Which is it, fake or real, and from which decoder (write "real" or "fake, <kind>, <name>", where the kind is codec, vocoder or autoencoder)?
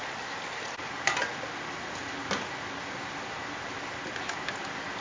real